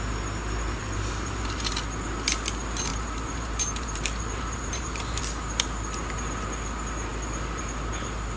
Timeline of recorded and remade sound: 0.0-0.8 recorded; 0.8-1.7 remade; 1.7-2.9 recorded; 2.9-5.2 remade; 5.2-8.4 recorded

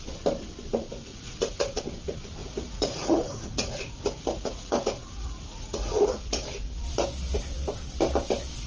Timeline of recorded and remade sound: 0.0-1.1 recorded; 1.1-1.8 remade; 1.8-2.4 recorded; 2.4-6.1 remade; 6.1-8.7 recorded

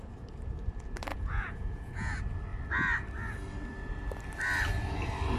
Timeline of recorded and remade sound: 0.0-1.1 recorded; 1.1-2.1 remade; 2.1-5.4 recorded

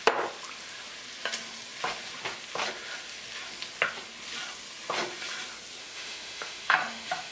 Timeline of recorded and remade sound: 0.0-5.8 recorded; 5.8-7.3 remade